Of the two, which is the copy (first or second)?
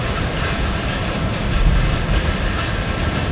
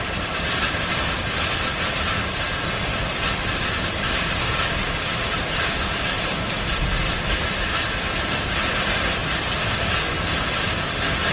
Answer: second